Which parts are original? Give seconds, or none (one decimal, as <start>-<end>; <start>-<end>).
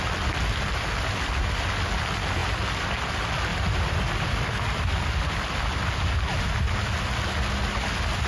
0.0-3.5; 5.9-8.3